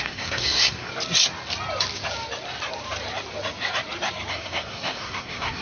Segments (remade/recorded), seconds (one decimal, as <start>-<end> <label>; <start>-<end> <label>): 0.0-0.9 remade; 0.9-4.3 recorded; 4.3-5.6 remade